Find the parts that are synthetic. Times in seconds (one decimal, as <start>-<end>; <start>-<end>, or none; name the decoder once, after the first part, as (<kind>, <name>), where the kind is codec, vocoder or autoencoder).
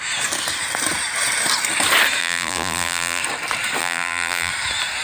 2.2-3.2 (vocoder, BigVGAN v2); 3.8-4.5